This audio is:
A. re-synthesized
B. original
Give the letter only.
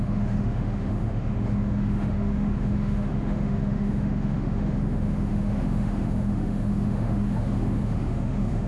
A